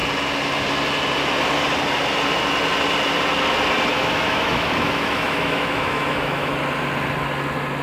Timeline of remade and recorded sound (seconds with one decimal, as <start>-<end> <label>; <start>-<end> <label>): 0.0-3.9 recorded; 3.9-6.5 remade; 6.5-7.8 recorded